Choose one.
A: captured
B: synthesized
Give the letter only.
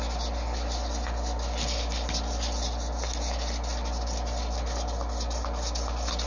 A